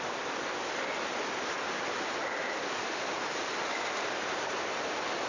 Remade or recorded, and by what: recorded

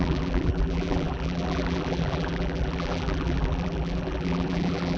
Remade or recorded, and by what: remade, vocoder, BigVGAN v2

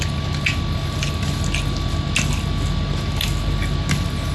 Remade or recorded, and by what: recorded